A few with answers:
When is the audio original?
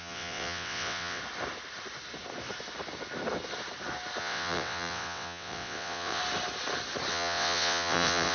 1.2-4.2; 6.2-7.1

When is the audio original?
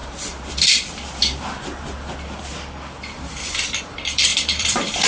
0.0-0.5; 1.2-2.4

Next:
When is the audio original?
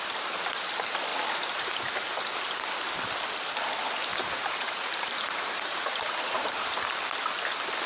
0.0-4.1; 6.7-7.9